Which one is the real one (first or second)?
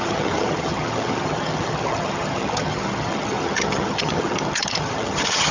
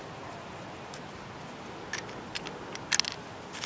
second